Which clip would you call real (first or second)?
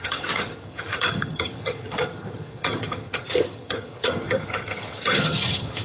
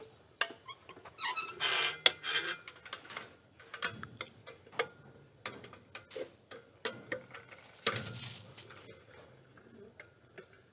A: second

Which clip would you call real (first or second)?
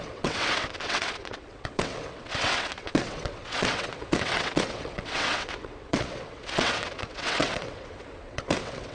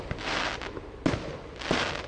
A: second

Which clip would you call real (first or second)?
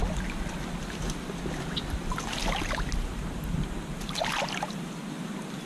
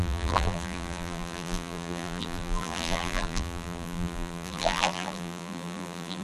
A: first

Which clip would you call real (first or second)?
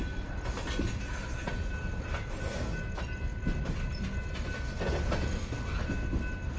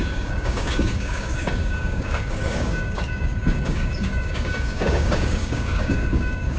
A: first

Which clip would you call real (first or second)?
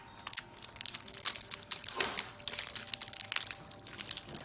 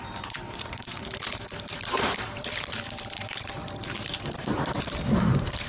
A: first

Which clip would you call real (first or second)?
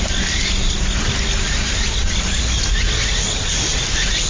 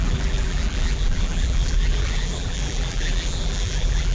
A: first